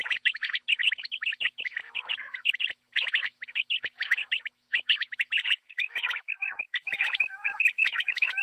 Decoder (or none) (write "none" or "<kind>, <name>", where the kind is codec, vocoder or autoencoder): autoencoder, DAC-VAE